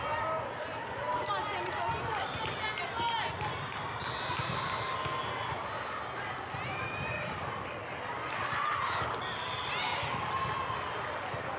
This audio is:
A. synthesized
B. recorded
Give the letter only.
B